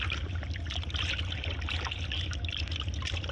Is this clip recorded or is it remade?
recorded